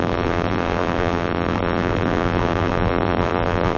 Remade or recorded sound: remade